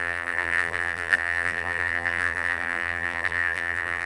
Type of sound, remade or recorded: remade